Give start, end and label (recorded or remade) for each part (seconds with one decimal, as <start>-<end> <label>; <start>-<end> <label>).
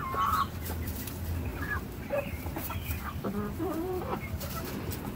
0.0-1.5 recorded; 1.5-4.6 remade; 4.6-5.2 recorded